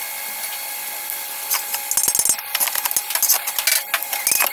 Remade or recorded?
recorded